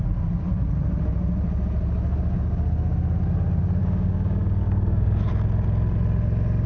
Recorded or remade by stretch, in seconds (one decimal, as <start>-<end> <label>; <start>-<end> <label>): 0.0-3.8 recorded; 3.8-5.2 remade; 5.2-6.7 recorded